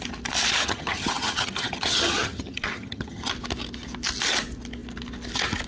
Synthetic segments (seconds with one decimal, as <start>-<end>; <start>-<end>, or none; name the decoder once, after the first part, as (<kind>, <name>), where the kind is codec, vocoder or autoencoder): 0.6-3.3 (vocoder, HiFi-GAN)